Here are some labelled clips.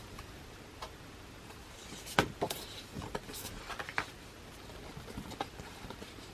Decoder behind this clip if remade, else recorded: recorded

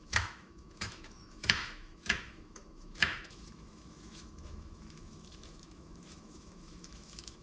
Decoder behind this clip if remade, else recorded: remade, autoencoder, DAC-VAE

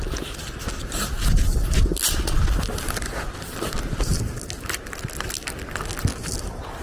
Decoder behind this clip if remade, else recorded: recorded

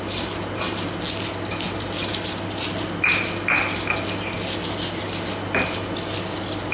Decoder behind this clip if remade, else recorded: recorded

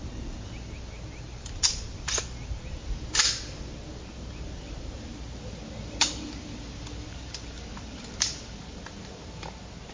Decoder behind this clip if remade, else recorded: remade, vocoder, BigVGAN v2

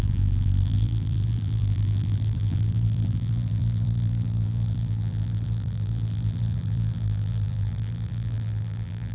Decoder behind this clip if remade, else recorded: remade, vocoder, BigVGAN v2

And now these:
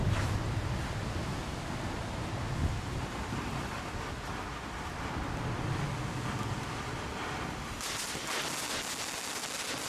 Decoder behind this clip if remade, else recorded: recorded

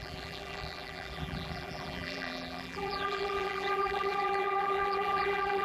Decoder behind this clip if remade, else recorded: remade, vocoder, BigVGAN v2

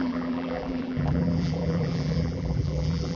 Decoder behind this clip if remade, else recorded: remade, vocoder, BigVGAN v2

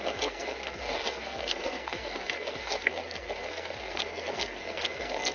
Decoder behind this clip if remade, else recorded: remade, codec, SNAC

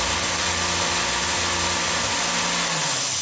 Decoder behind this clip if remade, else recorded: recorded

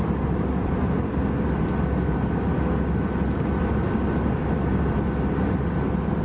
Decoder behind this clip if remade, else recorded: recorded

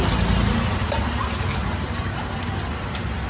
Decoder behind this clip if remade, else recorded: recorded